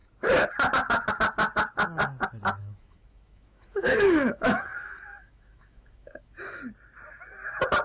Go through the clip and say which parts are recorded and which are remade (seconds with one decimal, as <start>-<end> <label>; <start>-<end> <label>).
0.0-2.6 recorded; 2.6-6.6 remade; 6.6-7.8 recorded